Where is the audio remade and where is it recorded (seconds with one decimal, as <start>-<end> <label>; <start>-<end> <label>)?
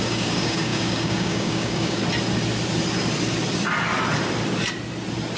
0.0-2.0 remade; 2.0-5.4 recorded